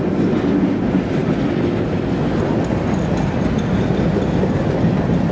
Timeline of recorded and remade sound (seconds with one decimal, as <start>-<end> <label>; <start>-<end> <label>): 0.0-5.3 recorded